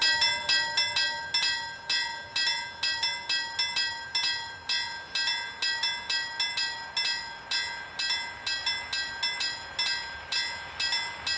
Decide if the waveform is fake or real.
real